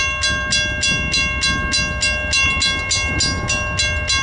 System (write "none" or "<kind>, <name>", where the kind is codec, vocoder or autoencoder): none